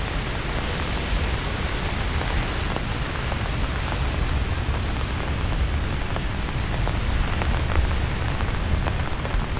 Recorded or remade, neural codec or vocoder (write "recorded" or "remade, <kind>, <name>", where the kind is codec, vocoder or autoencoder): recorded